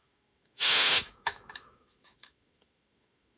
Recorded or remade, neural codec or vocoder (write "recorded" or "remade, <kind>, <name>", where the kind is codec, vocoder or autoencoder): remade, autoencoder, DAC-VAE